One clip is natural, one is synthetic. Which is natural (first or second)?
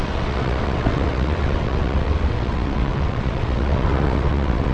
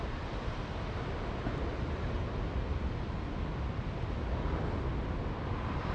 second